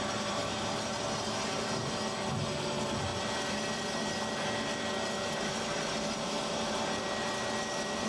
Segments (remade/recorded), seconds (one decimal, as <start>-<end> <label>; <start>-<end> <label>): 0.0-8.1 recorded

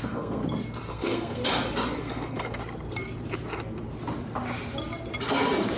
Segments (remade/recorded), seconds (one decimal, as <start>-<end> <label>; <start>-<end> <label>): 0.0-0.4 remade; 0.4-0.9 recorded; 0.9-1.4 remade; 1.4-2.0 recorded; 2.0-2.6 remade; 2.6-5.8 recorded

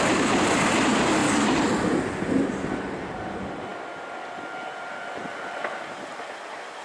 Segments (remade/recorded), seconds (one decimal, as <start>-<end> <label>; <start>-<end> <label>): 0.0-1.2 recorded; 1.2-2.6 remade; 2.6-6.8 recorded

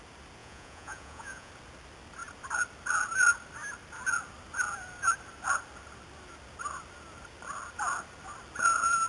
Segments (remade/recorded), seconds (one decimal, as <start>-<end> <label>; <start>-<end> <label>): 0.0-0.4 recorded; 0.4-1.5 remade; 1.5-9.1 recorded

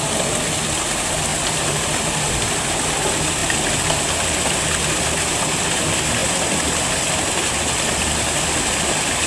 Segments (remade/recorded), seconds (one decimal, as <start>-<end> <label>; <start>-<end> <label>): 0.0-1.3 recorded; 1.3-2.3 remade; 2.3-9.3 recorded

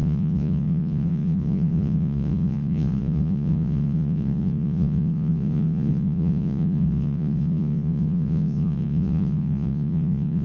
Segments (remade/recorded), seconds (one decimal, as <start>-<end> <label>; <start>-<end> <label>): 0.0-10.4 remade

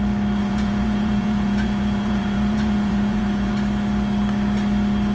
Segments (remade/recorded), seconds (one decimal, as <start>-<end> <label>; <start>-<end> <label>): 0.0-0.4 recorded; 0.4-3.5 remade; 3.5-5.1 recorded